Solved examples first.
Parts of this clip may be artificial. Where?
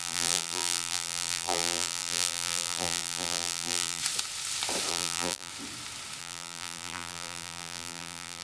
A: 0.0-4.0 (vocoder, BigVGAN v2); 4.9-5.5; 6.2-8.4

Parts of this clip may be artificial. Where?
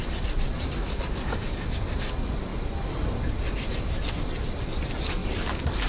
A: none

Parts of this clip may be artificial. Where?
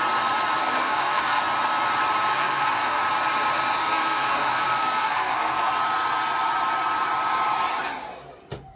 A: 0.6-1.4 (codec, SNAC); 2.3-3.0; 3.8-5.7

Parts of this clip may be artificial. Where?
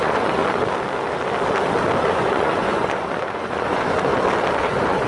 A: 0.0-0.4 (vocoder, Vocos); 2.0-4.1; 4.6-5.1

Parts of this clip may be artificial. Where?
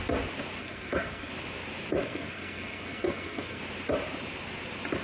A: 0.6-1.3 (codec, SNAC); 2.0-3.6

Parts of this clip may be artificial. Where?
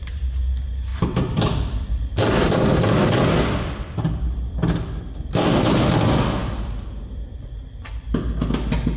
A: 0.9-5.0 (vocoder, BigVGAN v2); 6.4-8.3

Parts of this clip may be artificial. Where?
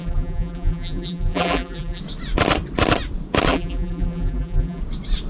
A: 0.0-2.0 (vocoder, BigVGAN v2); 3.5-4.8